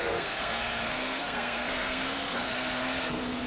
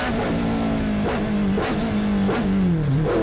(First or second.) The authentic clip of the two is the second